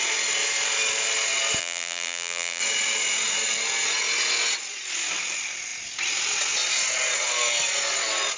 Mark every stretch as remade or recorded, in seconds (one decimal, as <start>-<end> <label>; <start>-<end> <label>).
0.0-1.6 recorded; 1.6-2.6 remade; 2.6-8.4 recorded